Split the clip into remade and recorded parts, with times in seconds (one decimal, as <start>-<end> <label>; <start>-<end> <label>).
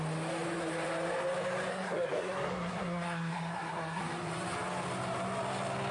0.0-1.7 recorded; 1.7-4.0 remade; 4.0-5.9 recorded